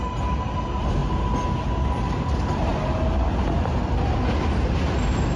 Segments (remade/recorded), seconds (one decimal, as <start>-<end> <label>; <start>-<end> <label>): 0.0-5.4 recorded